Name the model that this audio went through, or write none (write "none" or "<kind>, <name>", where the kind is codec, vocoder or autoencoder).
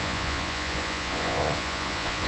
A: vocoder, Vocos